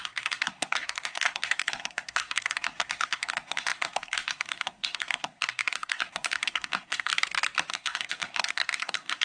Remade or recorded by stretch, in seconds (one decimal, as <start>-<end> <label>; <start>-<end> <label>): 0.0-7.1 remade; 7.1-7.7 recorded; 7.7-9.2 remade